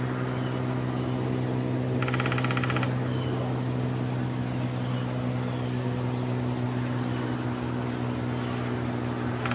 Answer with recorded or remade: recorded